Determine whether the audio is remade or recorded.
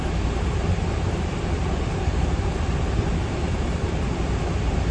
remade